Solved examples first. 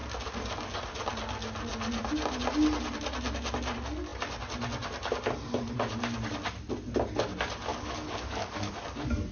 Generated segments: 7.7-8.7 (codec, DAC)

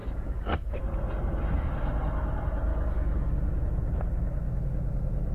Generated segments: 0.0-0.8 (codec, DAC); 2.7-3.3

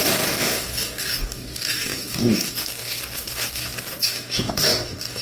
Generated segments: 0.0-5.2 (codec, DAC)

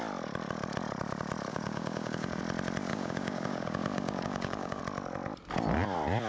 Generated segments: 1.5-2.4 (codec, DAC); 2.9-4.8

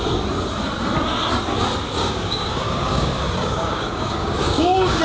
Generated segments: 1.9-5.0 (codec, DAC)

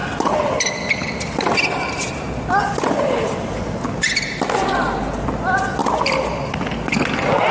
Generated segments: none

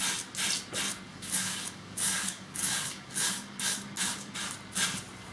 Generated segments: 1.1-4.3 (codec, DAC)

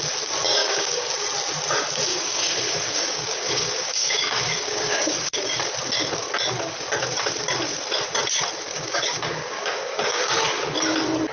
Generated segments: 0.6-1.1 (codec, DAC); 2.1-5.6; 8.7-10.3